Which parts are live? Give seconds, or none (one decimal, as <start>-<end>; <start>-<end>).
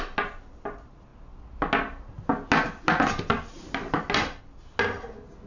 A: 0.0-5.5